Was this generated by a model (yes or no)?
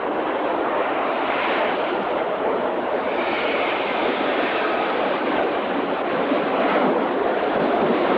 no